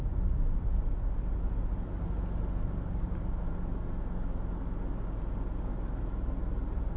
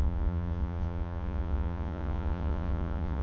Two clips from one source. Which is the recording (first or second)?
first